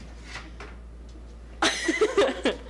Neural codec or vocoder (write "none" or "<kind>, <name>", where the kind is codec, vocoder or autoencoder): none